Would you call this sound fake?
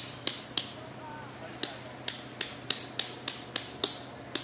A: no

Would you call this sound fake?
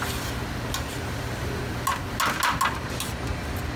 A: no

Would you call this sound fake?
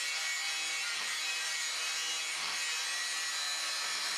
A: no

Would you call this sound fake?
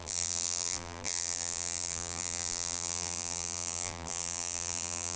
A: yes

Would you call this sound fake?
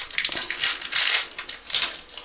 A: no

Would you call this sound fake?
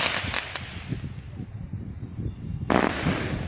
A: no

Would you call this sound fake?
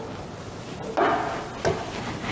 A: no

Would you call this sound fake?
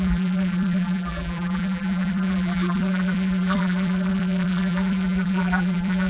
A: yes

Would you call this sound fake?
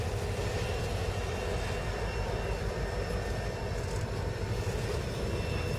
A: yes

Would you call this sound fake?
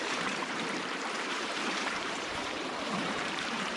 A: yes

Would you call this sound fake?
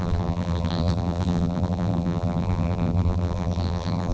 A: yes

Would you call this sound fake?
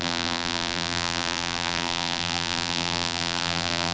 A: yes